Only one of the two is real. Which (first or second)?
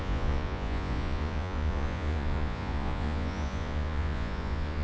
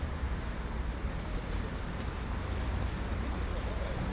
second